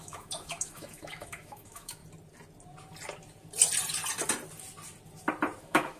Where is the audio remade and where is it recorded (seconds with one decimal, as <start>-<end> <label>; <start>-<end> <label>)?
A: 0.0-2.0 remade; 2.0-5.6 recorded; 5.6-6.0 remade